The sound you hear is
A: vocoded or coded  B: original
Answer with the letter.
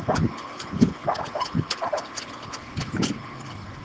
A